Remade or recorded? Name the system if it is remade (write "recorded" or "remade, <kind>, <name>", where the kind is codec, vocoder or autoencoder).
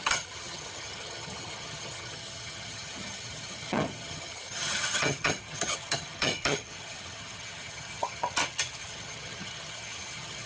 remade, vocoder, HiFi-GAN